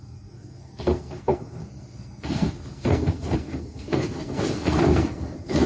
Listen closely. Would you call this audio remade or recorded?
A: remade